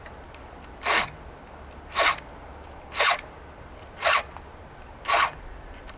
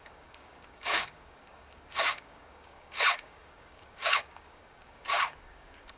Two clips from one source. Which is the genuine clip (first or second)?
first